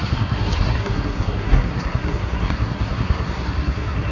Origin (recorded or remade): remade